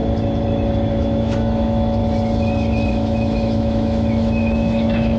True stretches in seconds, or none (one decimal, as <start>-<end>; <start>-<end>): 0.0-0.9; 2.0-2.9